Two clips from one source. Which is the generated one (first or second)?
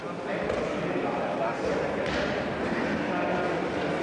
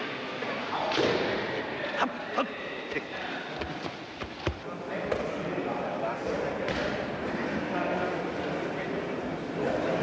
second